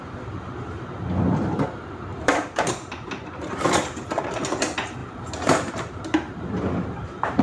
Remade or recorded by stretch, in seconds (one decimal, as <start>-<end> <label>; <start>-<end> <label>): 0.0-2.1 recorded; 2.1-4.0 remade; 4.0-5.0 recorded; 5.0-7.4 remade